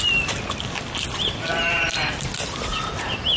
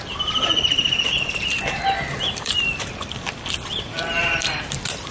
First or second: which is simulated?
second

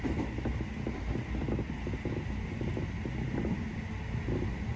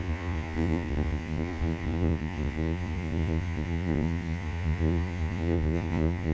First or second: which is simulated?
second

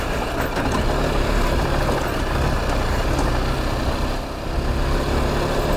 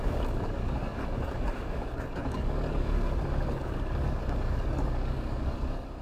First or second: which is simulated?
second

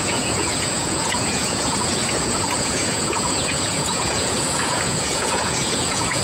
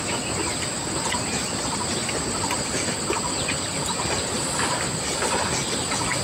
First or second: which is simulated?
first